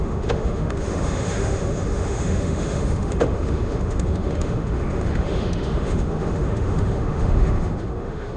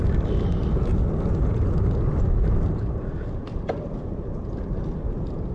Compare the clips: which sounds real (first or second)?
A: second